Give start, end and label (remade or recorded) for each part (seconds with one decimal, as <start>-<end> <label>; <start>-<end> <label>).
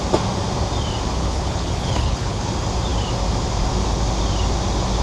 0.0-1.2 recorded; 1.2-2.5 remade; 2.5-5.0 recorded